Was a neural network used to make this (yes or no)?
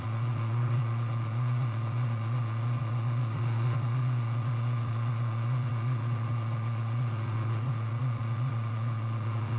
yes